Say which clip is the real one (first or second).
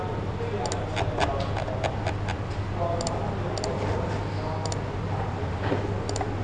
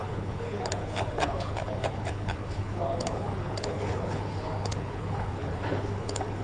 first